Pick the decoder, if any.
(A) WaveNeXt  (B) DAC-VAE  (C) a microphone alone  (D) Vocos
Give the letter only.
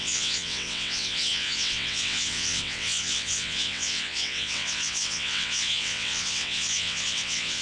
A